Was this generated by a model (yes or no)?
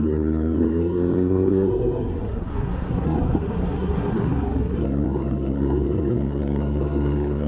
yes